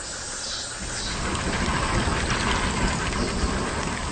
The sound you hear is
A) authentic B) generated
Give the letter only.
A